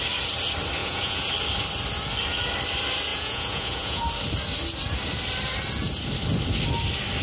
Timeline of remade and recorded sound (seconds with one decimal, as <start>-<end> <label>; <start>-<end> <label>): 0.0-0.8 recorded; 0.8-1.3 remade; 1.3-3.1 recorded; 3.1-4.0 remade; 4.0-7.2 recorded